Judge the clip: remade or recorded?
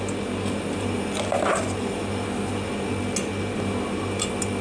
recorded